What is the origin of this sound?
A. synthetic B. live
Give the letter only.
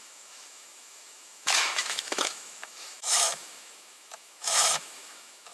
A